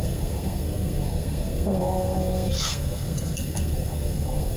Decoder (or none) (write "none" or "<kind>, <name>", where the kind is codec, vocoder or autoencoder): codec, SNAC